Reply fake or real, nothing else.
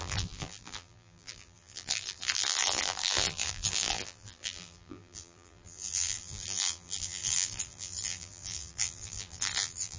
fake